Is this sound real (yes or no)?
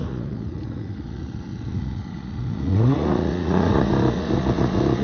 no